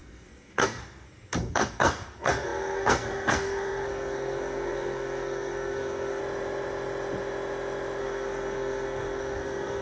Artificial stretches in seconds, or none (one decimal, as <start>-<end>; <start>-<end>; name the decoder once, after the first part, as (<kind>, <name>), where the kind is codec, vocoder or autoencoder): 0.0-6.2 (codec, SNAC); 8.0-9.8